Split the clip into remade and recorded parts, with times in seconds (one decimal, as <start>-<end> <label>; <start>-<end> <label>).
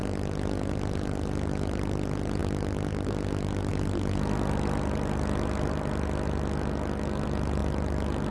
0.0-8.3 recorded